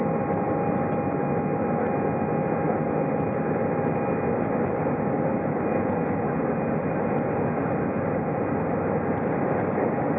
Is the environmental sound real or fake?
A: real